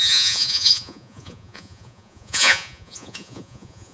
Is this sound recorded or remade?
remade